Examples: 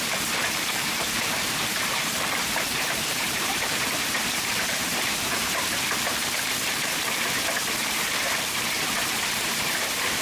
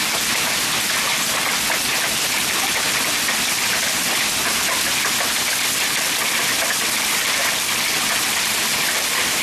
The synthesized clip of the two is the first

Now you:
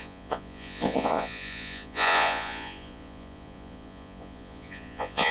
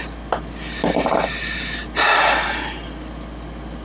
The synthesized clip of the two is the first